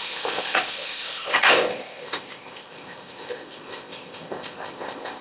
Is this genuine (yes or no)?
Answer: no